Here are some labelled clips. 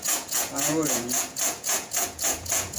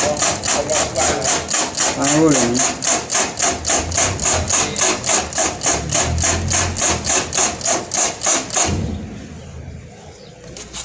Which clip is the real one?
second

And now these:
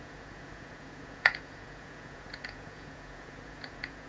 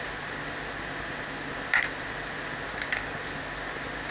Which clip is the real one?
second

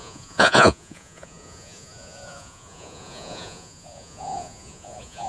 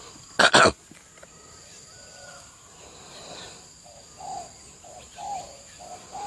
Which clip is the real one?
second